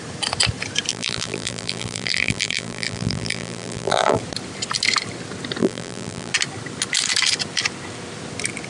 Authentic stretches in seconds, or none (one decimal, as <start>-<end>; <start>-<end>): 0.0-0.9; 4.2-5.6; 6.3-8.7